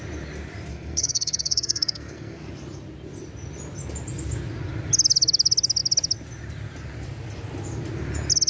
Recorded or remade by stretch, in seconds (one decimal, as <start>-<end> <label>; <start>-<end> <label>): 0.0-0.7 recorded; 0.7-2.5 remade; 2.5-8.5 recorded